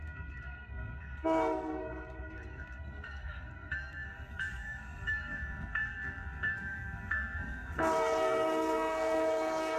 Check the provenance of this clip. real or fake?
fake